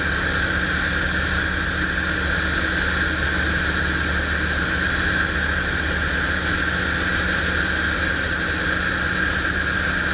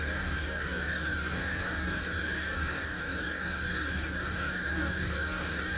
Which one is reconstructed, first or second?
second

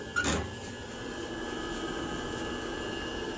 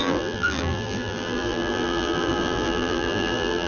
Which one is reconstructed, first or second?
second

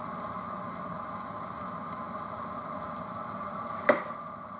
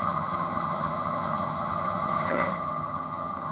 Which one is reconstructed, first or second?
second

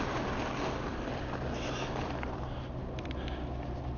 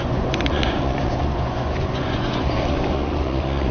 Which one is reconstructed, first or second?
second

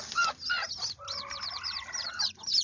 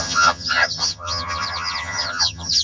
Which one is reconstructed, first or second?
second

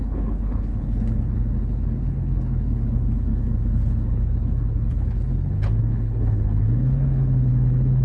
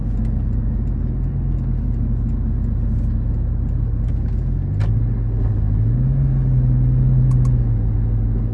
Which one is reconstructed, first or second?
first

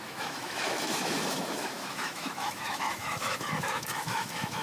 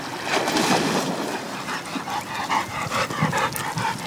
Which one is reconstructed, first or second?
first